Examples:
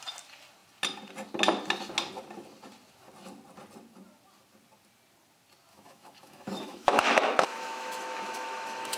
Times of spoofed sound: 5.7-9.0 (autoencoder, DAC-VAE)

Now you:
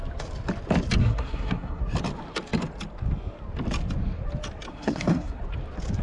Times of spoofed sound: 1.0-1.8 (codec, SNAC); 4.7-5.4

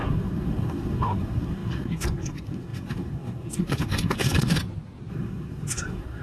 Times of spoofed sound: 0.0-4.6 (codec, SNAC); 5.1-6.2

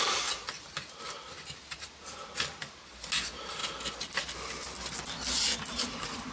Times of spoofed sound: none

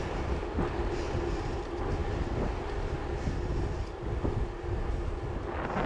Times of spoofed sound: none

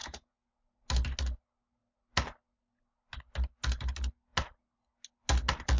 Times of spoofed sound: 0.0-0.5 (vocoder, Vocos)

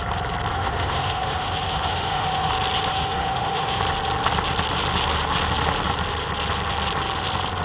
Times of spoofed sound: 0.5-2.5 (autoencoder, DAC-VAE); 2.9-3.8